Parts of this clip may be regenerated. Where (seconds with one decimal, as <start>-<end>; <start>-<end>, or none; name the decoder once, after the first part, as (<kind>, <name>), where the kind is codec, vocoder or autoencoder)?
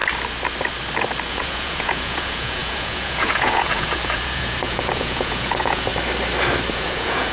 1.3-5.9 (vocoder, Vocos); 6.7-7.3